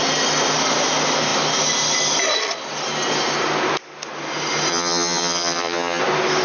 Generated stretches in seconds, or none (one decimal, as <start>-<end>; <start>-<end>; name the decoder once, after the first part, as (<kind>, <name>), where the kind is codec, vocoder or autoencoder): 4.7-6.0 (vocoder, HiFi-GAN)

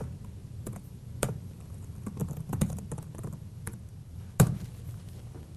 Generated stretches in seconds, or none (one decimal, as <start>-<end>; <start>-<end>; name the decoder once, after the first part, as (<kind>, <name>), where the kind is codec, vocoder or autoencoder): none

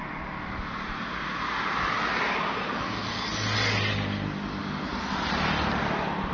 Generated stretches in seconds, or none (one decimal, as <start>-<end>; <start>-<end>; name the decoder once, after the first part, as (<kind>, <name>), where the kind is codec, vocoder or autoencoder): none

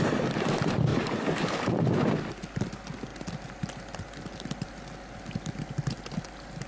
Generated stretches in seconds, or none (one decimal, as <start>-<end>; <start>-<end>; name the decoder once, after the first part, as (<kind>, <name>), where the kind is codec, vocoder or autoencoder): 0.9-2.3 (vocoder, BigVGAN v2)

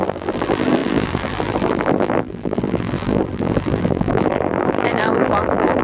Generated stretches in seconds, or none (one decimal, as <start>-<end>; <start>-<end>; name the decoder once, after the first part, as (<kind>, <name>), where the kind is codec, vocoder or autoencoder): 0.0-5.8 (vocoder, BigVGAN v2)